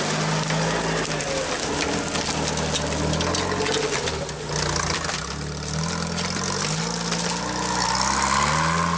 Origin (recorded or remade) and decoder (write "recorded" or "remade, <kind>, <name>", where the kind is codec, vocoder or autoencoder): recorded